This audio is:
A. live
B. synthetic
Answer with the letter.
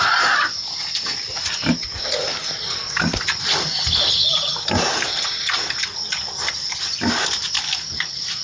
A